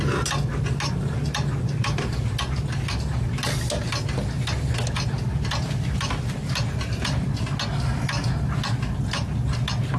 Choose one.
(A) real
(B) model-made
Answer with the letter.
A